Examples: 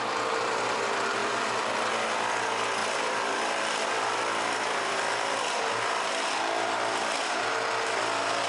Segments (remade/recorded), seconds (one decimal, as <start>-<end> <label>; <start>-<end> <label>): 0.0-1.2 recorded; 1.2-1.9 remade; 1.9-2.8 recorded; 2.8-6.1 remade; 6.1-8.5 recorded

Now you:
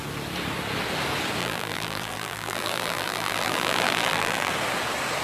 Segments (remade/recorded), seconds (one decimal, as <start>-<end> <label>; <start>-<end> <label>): 0.0-1.4 recorded; 1.4-4.5 remade; 4.5-5.2 recorded

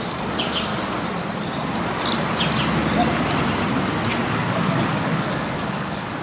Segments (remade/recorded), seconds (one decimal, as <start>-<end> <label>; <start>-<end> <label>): 0.0-0.7 remade; 0.7-4.3 recorded; 4.3-6.2 remade

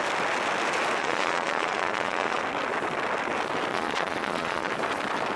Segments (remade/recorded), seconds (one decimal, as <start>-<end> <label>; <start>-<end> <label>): 0.0-1.0 recorded; 1.0-2.4 remade; 2.4-3.7 recorded; 3.7-4.7 remade; 4.7-5.4 recorded

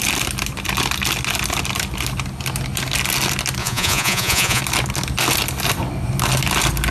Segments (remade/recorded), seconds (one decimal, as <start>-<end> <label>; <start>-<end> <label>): 0.0-3.6 recorded; 3.6-4.6 remade; 4.6-6.9 recorded

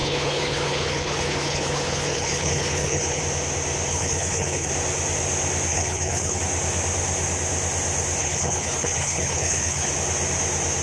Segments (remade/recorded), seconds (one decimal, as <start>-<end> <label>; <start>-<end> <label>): 0.0-3.2 remade; 3.2-3.9 recorded; 3.9-4.7 remade; 4.7-5.7 recorded; 5.7-6.4 remade; 6.4-8.2 recorded; 8.2-9.9 remade; 9.9-10.8 recorded

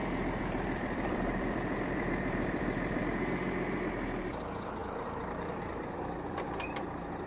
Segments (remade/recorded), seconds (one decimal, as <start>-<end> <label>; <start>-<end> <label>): 0.0-3.0 remade; 3.0-4.8 recorded; 4.8-5.6 remade; 5.6-7.3 recorded